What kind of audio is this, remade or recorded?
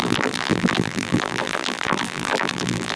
remade